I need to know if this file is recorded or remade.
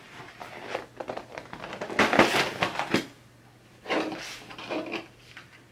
recorded